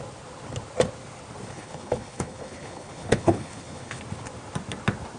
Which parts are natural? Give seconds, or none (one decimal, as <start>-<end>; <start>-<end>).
0.0-1.5; 4.0-5.2